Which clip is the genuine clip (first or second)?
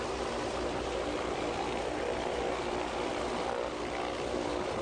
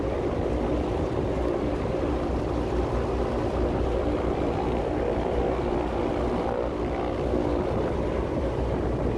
first